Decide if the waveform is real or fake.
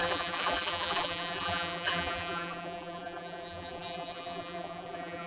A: fake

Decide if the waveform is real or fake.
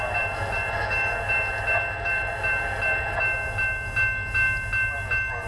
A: real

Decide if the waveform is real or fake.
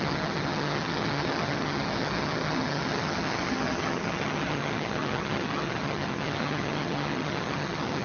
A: fake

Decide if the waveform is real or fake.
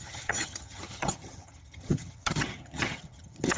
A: fake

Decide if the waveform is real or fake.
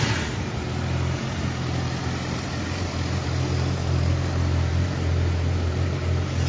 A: real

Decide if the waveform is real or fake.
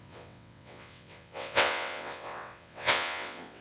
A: fake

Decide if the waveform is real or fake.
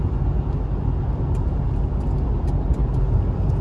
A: real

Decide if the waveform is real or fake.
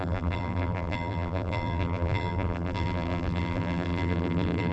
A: fake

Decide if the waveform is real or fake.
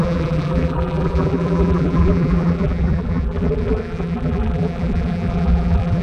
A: fake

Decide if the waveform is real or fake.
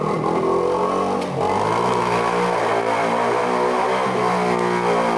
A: real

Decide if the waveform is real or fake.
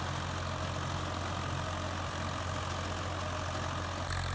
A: real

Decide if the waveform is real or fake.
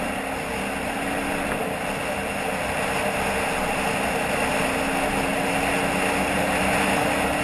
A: real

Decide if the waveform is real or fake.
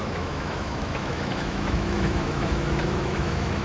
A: fake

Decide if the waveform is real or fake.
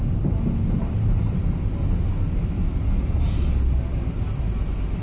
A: real